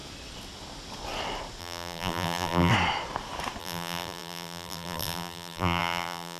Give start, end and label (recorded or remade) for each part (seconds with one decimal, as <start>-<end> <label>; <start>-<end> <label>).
0.0-1.6 recorded; 1.6-2.7 remade; 2.7-3.6 recorded; 3.6-6.4 remade